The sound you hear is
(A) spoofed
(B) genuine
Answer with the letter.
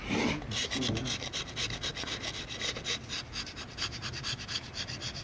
B